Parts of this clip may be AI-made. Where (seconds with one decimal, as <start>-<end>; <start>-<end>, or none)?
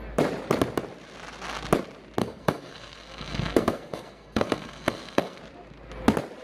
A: 2.2-5.4